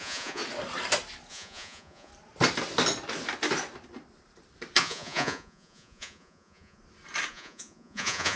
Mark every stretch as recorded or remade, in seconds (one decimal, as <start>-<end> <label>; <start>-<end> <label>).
0.0-0.4 remade; 0.4-1.3 recorded; 1.3-2.1 remade; 2.1-4.8 recorded; 4.8-6.8 remade; 6.8-7.3 recorded; 7.3-8.4 remade